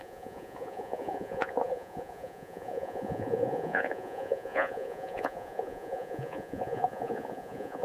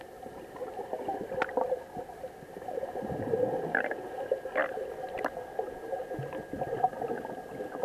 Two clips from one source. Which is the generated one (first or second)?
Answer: first